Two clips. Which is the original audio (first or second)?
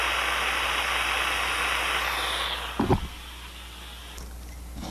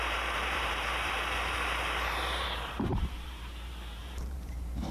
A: first